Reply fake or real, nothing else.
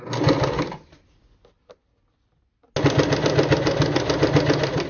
real